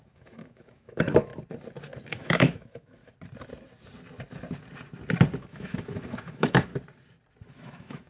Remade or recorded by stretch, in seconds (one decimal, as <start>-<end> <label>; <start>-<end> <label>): 0.0-1.3 remade; 1.3-2.1 recorded; 2.1-3.0 remade; 3.0-5.4 recorded; 5.4-6.7 remade; 6.7-7.5 recorded; 7.5-8.1 remade